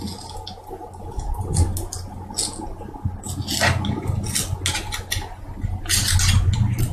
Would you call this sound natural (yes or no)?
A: yes